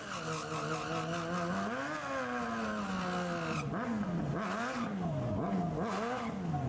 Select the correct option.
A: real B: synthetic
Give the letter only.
A